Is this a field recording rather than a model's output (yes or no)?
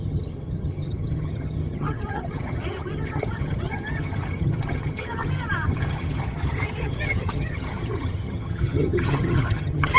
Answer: no